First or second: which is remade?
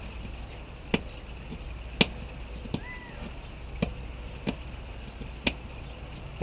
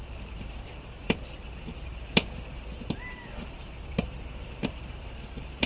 second